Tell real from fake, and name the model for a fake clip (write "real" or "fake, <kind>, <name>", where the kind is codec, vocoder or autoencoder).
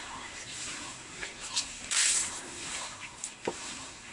fake, codec, SNAC